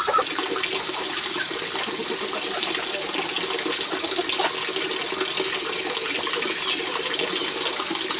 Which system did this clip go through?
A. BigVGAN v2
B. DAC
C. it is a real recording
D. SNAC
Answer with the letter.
C